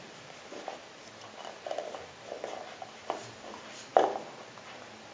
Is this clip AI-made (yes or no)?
no